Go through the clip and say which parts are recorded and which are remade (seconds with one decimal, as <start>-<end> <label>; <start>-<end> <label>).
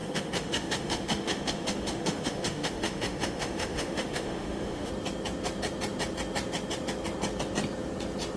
0.0-4.9 remade; 4.9-8.4 recorded